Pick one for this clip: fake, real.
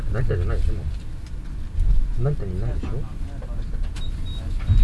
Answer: real